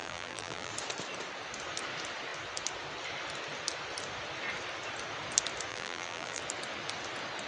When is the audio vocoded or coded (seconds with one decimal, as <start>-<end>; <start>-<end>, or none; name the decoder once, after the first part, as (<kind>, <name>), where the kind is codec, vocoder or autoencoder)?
0.0-0.7 (vocoder, BigVGAN v2); 5.7-6.4